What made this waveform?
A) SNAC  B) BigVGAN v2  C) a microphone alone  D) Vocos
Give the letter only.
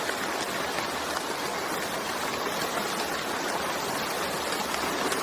C